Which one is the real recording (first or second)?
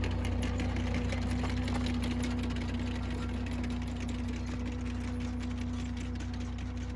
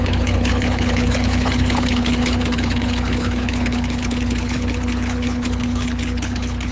first